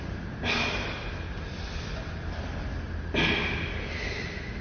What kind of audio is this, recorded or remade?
recorded